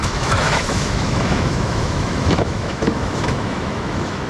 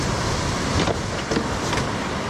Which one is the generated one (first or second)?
first